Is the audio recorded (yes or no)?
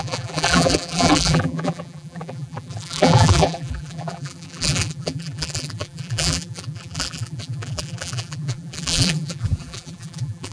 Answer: no